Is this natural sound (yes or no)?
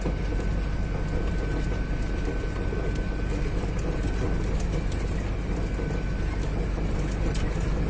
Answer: yes